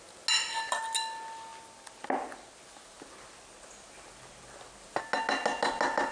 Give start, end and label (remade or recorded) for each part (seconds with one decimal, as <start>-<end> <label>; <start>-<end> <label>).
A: 0.0-6.1 recorded